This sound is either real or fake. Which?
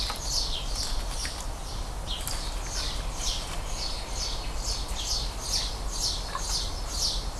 real